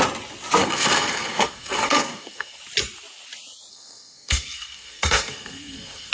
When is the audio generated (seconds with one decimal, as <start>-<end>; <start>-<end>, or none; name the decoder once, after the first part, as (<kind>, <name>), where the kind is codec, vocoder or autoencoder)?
0.6-2.6 (codec, SNAC); 3.7-6.1

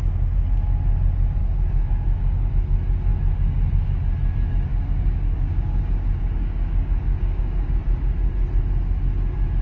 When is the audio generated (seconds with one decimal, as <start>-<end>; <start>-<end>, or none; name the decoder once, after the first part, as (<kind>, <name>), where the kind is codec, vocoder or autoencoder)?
1.4-2.5 (codec, DAC); 4.7-7.8

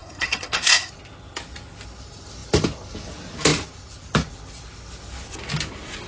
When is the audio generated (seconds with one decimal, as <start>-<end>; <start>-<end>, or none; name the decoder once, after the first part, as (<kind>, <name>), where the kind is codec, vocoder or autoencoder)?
0.0-0.9 (codec, SNAC)

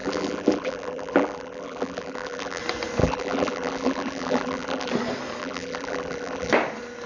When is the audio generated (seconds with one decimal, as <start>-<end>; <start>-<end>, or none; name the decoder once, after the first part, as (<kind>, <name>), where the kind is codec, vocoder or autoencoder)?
0.0-2.6 (vocoder, BigVGAN v2); 3.0-4.9; 5.4-6.5

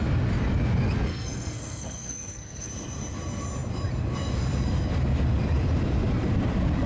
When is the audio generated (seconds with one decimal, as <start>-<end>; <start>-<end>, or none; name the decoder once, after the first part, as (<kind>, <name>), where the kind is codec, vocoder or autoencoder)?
1.1-2.7 (codec, SNAC)

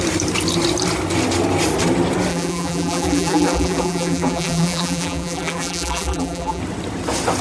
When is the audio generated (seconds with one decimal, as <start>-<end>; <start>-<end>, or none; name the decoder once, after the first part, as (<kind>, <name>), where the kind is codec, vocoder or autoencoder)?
2.3-6.6 (vocoder, BigVGAN v2)

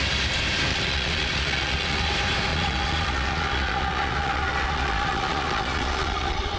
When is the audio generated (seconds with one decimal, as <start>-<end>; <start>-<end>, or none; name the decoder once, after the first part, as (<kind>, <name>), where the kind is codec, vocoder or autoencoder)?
0.7-2.1 (vocoder, Vocos); 2.5-6.6

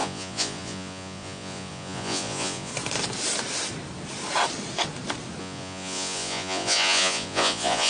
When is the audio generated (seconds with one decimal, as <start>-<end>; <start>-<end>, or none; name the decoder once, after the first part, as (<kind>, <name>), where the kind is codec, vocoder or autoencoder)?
0.0-2.7 (vocoder, Vocos); 5.4-7.9